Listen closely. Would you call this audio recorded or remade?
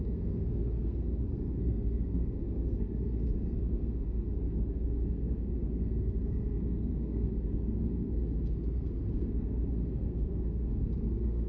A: remade